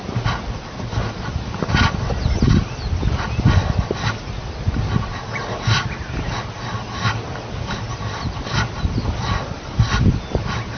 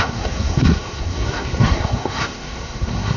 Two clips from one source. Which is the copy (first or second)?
second